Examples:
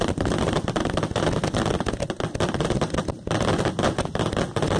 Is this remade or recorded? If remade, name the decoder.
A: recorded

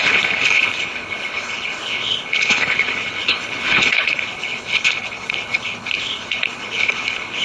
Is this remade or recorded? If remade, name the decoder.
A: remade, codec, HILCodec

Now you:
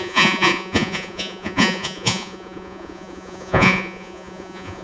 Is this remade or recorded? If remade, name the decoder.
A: remade, vocoder, Vocos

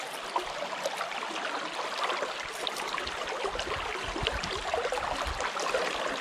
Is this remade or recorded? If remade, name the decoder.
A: recorded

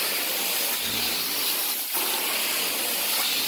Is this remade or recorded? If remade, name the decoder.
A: recorded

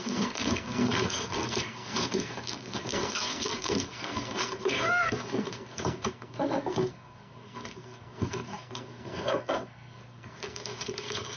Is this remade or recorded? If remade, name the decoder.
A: remade, codec, SNAC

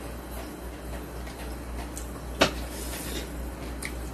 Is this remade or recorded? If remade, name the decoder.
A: recorded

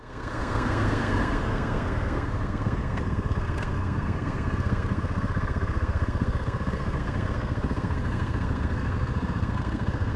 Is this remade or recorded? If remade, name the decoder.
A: remade, codec, SNAC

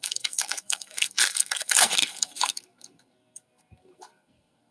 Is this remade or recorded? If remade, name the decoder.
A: remade, codec, SNAC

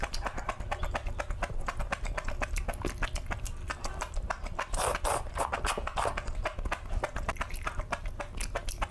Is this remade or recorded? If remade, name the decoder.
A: recorded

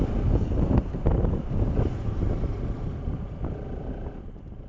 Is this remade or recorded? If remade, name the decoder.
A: recorded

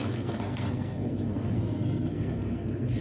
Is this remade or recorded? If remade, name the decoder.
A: remade, codec, SNAC